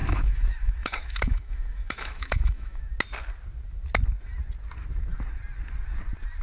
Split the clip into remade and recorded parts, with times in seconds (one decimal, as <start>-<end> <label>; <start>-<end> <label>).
0.0-2.8 remade; 2.8-6.4 recorded